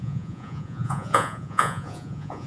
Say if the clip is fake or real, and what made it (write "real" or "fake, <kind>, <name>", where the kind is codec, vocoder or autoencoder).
fake, vocoder, Vocos